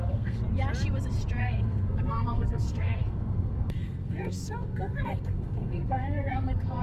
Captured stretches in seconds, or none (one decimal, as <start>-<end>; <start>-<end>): 0.4-1.4